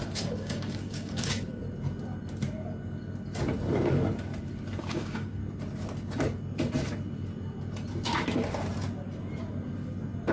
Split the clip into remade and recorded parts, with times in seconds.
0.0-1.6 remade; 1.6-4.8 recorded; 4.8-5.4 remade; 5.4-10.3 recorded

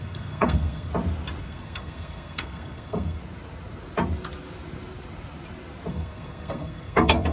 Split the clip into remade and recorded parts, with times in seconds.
0.0-0.9 remade; 0.9-1.4 recorded; 1.4-3.2 remade; 3.2-5.9 recorded; 5.9-7.3 remade

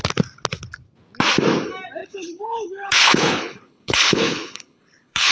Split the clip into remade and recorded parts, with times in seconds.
0.0-2.0 recorded; 2.0-5.3 remade

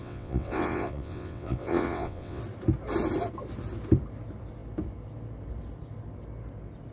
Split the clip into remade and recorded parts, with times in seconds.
0.0-2.4 remade; 2.4-6.9 recorded

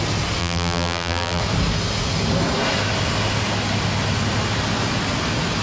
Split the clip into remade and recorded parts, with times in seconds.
0.0-0.4 recorded; 0.4-1.4 remade; 1.4-5.6 recorded